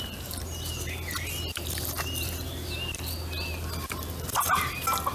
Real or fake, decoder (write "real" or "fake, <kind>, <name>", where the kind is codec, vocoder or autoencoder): real